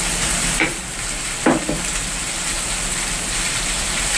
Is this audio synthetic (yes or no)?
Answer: yes